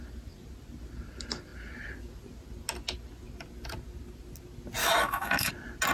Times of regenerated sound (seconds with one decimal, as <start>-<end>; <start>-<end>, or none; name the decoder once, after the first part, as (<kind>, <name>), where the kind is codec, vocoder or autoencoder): 4.8-5.5 (autoencoder, DAC-VAE)